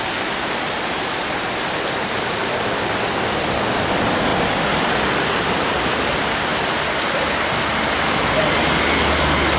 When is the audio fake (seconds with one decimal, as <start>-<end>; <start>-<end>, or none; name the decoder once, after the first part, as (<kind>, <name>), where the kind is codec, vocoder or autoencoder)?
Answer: none